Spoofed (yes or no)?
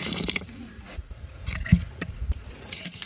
yes